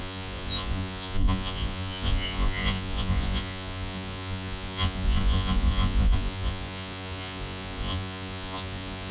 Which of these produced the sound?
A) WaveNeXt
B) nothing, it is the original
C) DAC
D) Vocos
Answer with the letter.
D